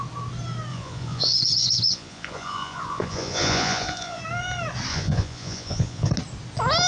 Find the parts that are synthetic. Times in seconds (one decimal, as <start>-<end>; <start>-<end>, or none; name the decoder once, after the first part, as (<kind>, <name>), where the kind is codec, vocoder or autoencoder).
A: 0.7-4.2 (vocoder, Vocos); 4.9-6.1